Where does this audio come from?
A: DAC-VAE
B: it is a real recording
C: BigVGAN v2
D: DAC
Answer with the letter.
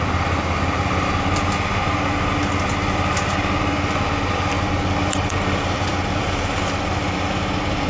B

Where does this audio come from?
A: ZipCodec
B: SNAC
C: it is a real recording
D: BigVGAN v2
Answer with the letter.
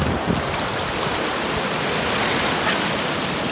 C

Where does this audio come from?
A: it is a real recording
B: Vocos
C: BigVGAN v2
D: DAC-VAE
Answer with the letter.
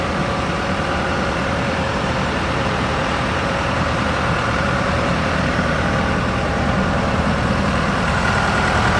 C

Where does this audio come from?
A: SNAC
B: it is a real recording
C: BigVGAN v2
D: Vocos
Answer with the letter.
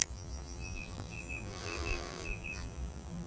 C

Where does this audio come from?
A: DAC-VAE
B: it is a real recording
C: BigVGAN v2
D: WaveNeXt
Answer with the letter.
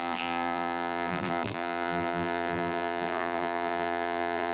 C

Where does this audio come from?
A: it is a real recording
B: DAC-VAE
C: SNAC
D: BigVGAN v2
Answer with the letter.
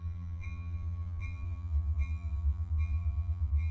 D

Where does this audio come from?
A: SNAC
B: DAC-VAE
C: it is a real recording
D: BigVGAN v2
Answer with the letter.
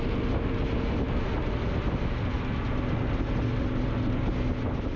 C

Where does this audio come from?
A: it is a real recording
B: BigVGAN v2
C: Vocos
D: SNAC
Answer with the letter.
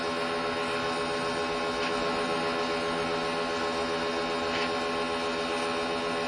A